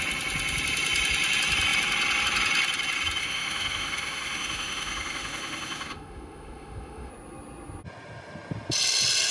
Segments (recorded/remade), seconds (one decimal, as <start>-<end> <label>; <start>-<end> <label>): 0.0-3.2 recorded; 3.2-7.1 remade; 7.1-9.3 recorded